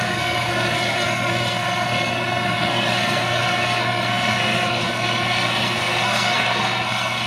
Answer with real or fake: fake